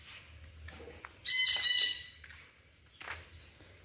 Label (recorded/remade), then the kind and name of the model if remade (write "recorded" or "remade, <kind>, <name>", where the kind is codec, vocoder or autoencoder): recorded